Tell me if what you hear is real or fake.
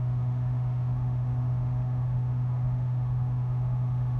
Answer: fake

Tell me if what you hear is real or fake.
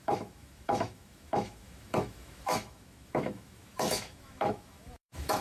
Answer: fake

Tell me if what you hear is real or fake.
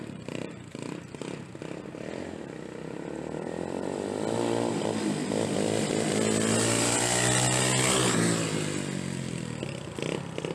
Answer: real